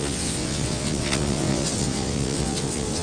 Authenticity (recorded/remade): remade